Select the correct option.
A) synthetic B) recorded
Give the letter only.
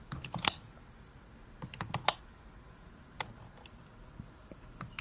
B